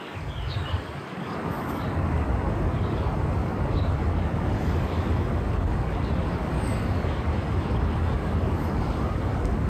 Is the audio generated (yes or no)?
yes